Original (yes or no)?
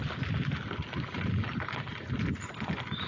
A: yes